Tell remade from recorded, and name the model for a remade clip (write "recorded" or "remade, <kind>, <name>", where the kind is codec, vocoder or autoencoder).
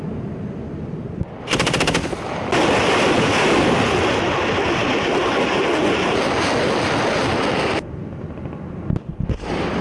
recorded